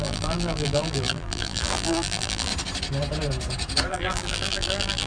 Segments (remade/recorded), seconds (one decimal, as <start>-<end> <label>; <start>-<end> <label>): 0.0-2.5 remade; 2.5-3.9 recorded; 3.9-5.1 remade